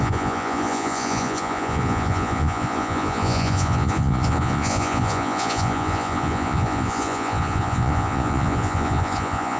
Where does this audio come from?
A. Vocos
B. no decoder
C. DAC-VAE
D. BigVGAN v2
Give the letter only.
A